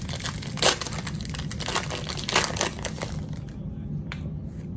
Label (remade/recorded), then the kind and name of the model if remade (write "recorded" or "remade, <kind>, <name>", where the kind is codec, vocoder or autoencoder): recorded